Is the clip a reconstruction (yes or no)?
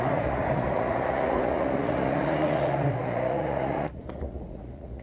yes